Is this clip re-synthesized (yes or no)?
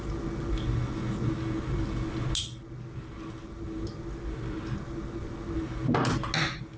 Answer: no